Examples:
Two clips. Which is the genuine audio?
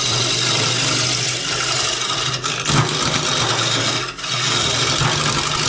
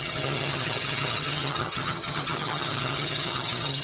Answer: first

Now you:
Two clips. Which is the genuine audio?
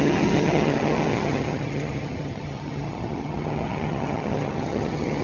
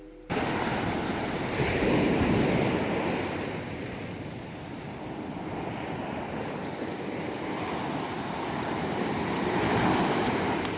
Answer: second